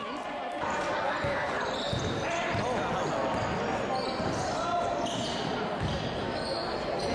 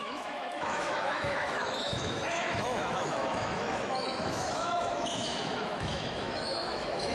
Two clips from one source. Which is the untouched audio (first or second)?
first